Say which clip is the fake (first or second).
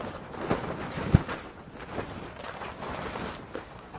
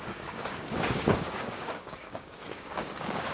second